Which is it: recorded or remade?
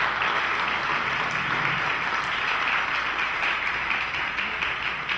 recorded